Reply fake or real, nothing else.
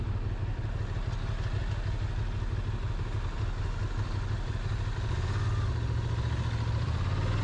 real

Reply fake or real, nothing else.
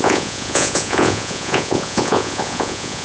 fake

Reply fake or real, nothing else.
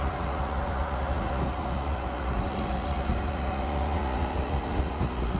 fake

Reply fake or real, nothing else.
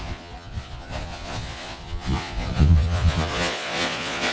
fake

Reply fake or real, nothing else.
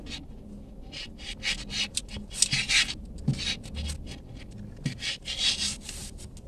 real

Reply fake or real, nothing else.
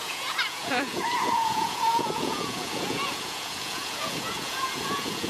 fake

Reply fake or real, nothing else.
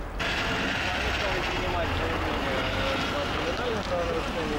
real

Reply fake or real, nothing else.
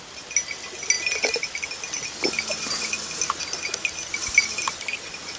real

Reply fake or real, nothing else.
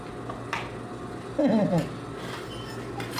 real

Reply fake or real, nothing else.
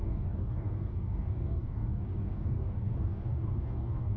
fake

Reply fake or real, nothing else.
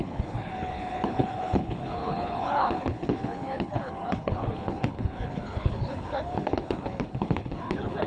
fake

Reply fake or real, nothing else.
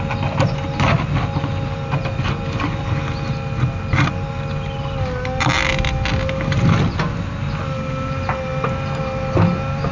real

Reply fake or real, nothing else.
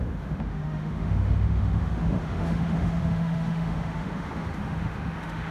fake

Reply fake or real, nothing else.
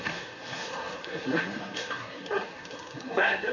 fake